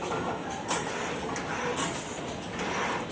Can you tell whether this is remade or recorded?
recorded